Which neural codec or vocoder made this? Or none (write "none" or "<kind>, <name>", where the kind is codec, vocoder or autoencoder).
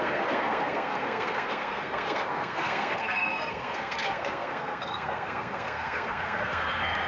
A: codec, SNAC